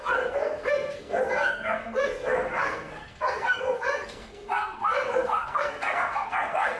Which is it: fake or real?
fake